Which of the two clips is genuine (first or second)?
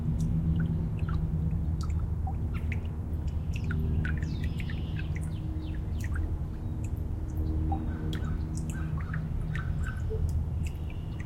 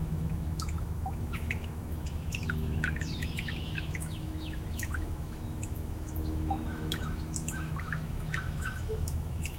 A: first